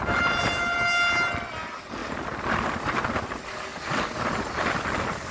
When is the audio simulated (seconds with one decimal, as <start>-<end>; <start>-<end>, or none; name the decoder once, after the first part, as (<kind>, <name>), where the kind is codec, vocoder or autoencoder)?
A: none